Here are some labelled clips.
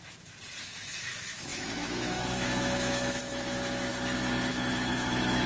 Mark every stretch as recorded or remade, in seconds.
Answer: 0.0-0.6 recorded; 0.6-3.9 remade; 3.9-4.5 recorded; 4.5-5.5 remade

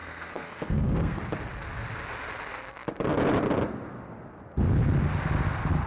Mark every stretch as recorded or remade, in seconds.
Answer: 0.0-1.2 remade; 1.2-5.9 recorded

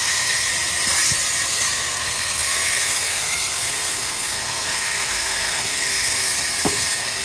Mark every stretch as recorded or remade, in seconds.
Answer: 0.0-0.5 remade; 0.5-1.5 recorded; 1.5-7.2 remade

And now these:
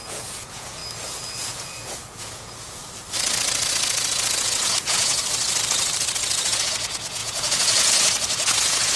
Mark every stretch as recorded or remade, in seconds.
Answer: 0.0-0.8 remade; 0.8-1.3 recorded; 1.3-2.8 remade; 2.8-3.7 recorded; 3.7-5.2 remade; 5.2-6.3 recorded; 6.3-9.0 remade